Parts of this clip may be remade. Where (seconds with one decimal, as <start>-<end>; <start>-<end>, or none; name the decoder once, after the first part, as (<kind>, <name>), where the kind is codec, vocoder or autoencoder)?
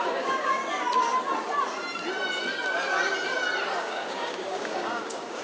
0.0-0.6 (codec, DAC); 3.8-5.4